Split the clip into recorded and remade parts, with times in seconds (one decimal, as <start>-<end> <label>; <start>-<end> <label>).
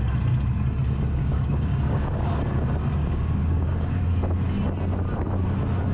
0.0-1.2 recorded; 1.2-2.3 remade; 2.3-3.0 recorded; 3.0-4.0 remade; 4.0-5.9 recorded